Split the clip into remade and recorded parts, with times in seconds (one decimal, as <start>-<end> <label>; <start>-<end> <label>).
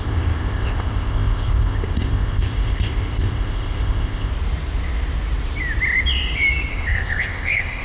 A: 0.0-4.3 remade; 4.3-6.7 recorded; 6.7-7.8 remade